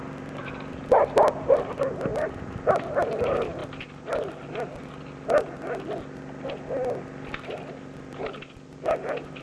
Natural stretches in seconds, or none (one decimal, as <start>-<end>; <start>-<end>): 0.0-9.4